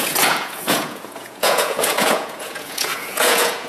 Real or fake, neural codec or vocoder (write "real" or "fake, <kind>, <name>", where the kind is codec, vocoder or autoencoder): fake, vocoder, Vocos